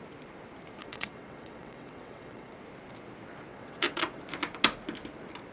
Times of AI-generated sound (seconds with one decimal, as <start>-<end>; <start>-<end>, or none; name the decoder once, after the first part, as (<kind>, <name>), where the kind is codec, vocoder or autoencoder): 0.8-2.5 (vocoder, WaveNeXt); 3.5-4.2